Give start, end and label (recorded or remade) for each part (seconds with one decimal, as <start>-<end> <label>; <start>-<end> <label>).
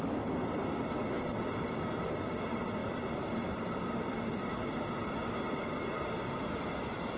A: 0.0-2.8 recorded; 2.8-4.5 remade; 4.5-7.2 recorded